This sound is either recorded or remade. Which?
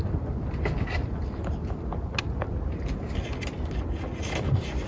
recorded